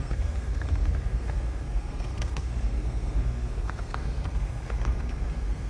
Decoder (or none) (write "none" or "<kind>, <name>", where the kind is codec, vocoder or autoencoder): codec, SNAC